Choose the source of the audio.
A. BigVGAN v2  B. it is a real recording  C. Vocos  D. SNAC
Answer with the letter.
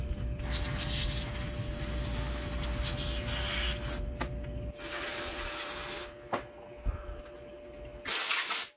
B